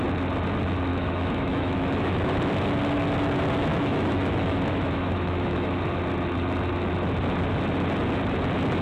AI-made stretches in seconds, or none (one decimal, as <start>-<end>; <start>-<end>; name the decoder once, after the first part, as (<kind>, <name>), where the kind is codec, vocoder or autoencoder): 0.9-2.5 (autoencoder, DAC-VAE); 3.7-5.8